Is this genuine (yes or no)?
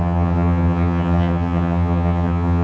no